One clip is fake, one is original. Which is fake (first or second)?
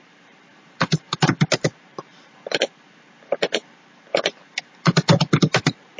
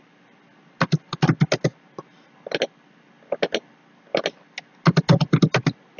first